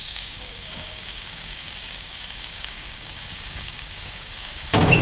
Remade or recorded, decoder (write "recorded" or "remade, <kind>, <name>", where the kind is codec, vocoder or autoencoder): remade, codec, DAC